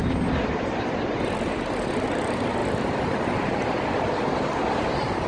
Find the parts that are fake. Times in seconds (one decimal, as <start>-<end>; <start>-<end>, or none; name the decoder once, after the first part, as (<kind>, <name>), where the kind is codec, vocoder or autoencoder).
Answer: none